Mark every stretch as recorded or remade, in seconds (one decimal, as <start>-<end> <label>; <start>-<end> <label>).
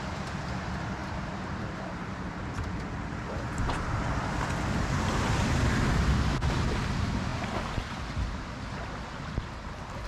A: 0.0-1.0 recorded; 1.0-2.6 remade; 2.6-10.1 recorded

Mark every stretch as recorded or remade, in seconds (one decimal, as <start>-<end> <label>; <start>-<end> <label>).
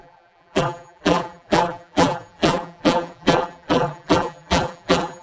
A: 0.0-5.2 remade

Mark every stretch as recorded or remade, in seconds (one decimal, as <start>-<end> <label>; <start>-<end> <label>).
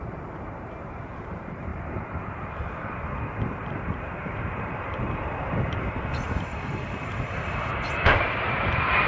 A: 0.0-9.1 remade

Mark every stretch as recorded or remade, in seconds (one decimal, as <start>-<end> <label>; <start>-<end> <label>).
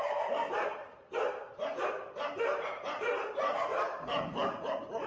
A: 0.0-1.1 remade; 1.1-2.6 recorded; 2.6-5.1 remade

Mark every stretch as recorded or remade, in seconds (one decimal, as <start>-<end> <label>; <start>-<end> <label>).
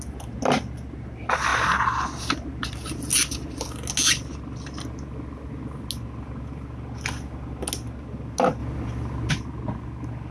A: 0.0-10.3 recorded